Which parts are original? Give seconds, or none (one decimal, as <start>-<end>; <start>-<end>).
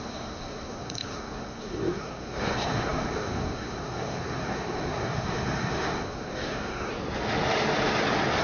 6.9-8.4